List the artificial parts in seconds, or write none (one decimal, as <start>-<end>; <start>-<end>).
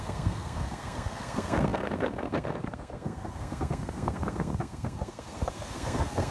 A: 0.0-6.3